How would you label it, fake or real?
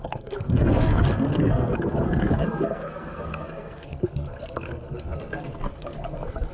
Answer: fake